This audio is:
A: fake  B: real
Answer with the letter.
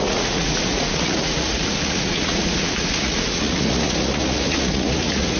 A